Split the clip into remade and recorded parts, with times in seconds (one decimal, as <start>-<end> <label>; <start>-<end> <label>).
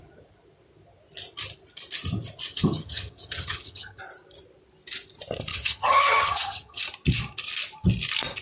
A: 0.0-2.5 recorded; 2.5-4.0 remade; 4.0-5.5 recorded; 5.5-6.8 remade; 6.8-8.4 recorded